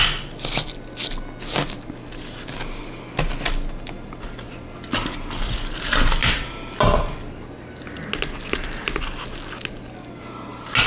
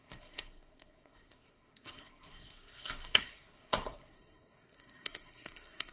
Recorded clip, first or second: first